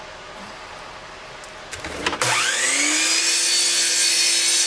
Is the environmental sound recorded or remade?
recorded